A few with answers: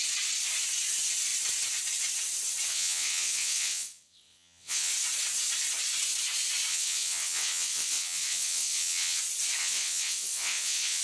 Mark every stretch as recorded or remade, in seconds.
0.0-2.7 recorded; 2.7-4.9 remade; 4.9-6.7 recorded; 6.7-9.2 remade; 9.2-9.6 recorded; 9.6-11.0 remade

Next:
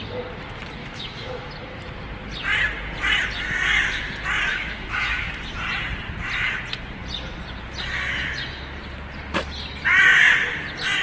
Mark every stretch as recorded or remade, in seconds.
0.0-0.8 recorded; 0.8-1.5 remade; 1.5-4.5 recorded; 4.5-5.3 remade; 5.3-11.0 recorded

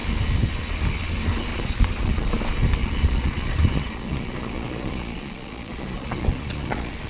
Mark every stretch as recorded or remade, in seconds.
0.0-1.5 recorded; 1.5-2.3 remade; 2.3-2.8 recorded; 2.8-7.1 remade

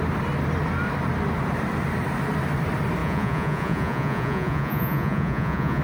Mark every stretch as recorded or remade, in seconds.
0.0-3.0 recorded; 3.0-5.8 remade

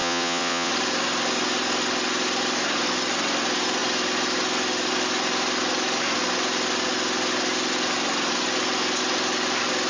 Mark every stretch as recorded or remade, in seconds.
0.0-0.7 remade; 0.7-9.9 recorded

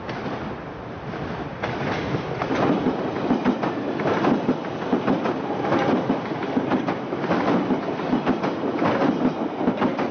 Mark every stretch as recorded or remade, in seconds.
0.0-6.4 recorded; 6.4-8.8 remade; 8.8-10.1 recorded

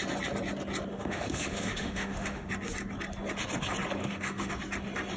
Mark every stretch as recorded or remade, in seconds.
0.0-0.9 recorded; 0.9-2.5 remade; 2.5-4.0 recorded; 4.0-4.5 remade; 4.5-5.2 recorded